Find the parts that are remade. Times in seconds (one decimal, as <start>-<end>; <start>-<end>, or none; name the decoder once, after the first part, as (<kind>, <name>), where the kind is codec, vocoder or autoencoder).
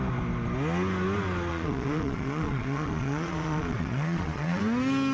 1.5-4.6 (vocoder, Vocos)